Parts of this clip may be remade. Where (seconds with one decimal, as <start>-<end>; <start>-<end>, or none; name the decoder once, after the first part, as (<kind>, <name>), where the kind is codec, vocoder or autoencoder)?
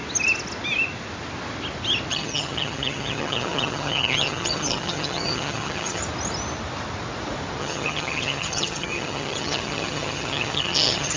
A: 2.1-6.0 (vocoder, HiFi-GAN); 7.6-11.2